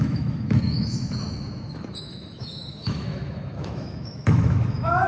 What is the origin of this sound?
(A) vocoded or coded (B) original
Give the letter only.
A